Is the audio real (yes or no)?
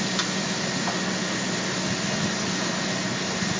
yes